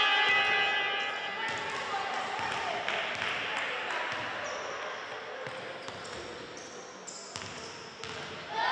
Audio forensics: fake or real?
real